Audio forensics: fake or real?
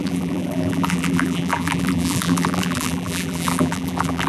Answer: fake